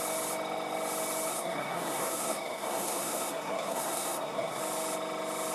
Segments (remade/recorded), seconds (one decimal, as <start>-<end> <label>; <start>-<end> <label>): 0.0-1.3 recorded; 1.3-4.6 remade; 4.6-5.5 recorded